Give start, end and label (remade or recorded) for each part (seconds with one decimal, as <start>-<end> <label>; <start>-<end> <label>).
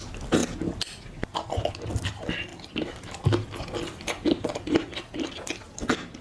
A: 0.0-6.2 recorded